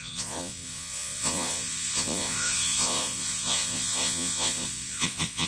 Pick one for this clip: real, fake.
fake